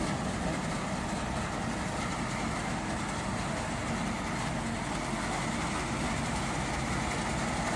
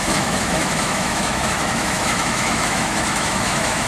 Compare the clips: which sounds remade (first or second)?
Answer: second